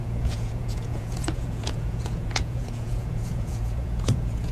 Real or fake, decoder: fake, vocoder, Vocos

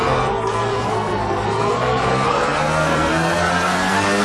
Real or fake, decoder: fake, codec, SNAC